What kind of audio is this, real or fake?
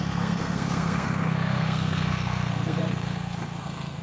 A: fake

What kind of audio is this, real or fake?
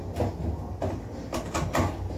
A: real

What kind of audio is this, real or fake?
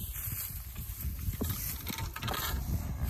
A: real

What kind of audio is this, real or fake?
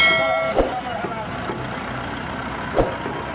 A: real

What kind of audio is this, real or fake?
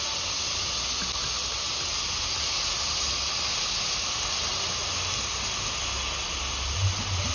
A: real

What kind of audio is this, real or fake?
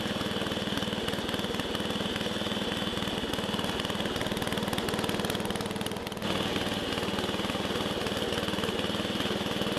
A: real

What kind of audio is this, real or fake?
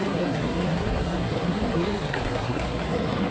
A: fake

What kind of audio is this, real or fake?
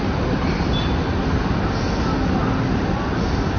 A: real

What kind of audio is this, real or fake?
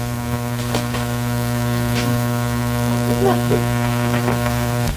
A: fake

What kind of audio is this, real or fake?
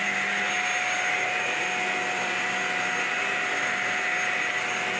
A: real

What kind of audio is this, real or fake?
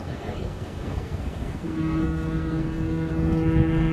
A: fake